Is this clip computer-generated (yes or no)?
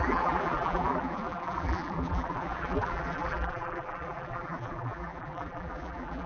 yes